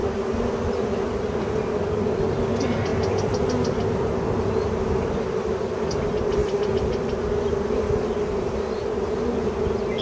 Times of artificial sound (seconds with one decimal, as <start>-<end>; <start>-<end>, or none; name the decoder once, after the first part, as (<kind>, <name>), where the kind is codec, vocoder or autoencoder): none